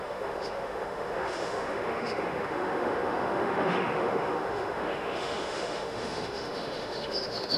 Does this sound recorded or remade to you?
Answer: remade